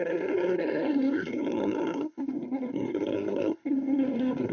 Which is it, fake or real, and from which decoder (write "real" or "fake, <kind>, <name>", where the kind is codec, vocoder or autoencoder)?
fake, codec, SNAC